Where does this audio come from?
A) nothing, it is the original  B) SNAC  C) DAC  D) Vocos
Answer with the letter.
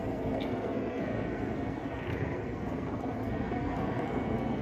B